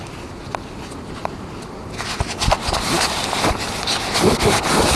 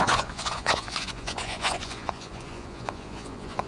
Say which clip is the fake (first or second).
second